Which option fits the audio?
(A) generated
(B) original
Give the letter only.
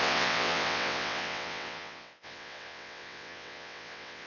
A